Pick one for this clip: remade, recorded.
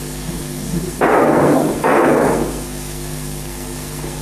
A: remade